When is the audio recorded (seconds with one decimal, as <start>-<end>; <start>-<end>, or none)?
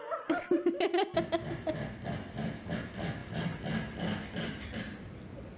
0.0-5.6